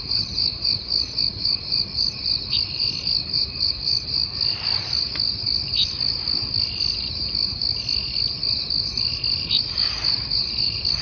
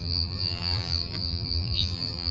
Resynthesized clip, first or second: second